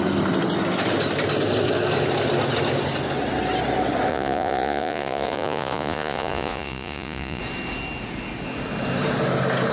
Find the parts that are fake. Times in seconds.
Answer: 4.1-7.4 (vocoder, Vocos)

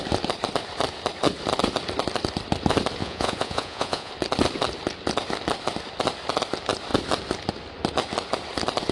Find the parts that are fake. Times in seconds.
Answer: 3.0-4.1 (vocoder, Vocos)